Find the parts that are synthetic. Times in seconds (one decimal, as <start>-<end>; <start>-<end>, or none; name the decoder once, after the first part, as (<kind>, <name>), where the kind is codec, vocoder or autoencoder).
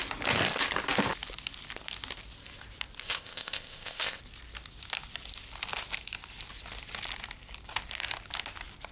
3.0-4.2 (codec, ZipCodec)